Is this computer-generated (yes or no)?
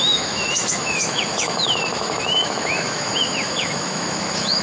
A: yes